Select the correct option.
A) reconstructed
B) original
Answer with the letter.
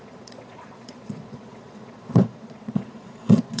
A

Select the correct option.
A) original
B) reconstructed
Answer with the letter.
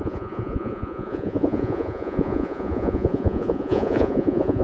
B